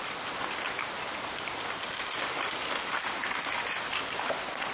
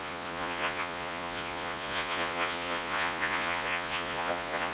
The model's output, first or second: second